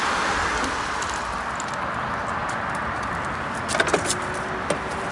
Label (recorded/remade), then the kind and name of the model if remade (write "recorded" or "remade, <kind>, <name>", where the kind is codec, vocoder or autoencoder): recorded